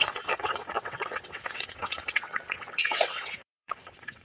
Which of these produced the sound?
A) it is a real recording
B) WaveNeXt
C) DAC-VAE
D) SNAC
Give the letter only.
B